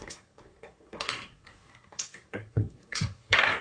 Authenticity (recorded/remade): remade